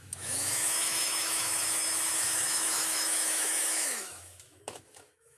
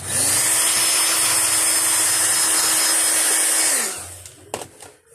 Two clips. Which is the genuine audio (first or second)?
second